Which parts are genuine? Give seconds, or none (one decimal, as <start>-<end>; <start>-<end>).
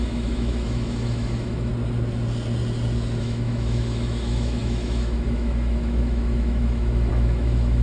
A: 1.7-3.2